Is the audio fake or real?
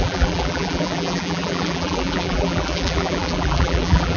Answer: fake